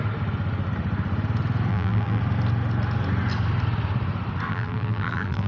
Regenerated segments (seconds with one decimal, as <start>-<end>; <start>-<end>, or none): 1.7-2.2; 4.5-5.5